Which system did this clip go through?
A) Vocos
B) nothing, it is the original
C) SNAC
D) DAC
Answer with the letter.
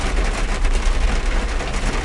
B